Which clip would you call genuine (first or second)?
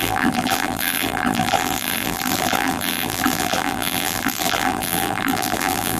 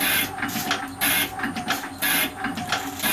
second